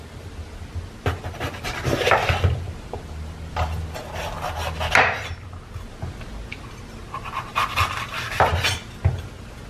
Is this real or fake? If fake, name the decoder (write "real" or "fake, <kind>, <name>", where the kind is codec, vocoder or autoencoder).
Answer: real